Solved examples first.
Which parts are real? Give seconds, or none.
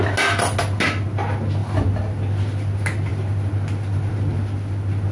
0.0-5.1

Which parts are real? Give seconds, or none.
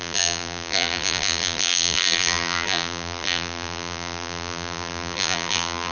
none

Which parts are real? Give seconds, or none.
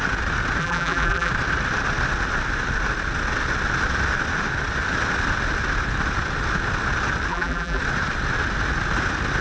0.0-0.6; 1.3-7.3; 7.8-9.4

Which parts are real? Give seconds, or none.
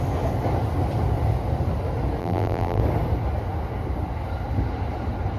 0.0-2.2; 2.8-5.4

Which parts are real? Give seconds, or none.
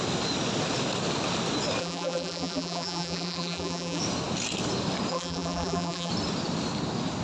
0.0-1.8; 4.0-5.1; 6.1-7.2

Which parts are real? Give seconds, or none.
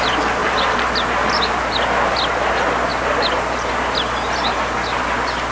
0.0-0.4; 2.5-5.5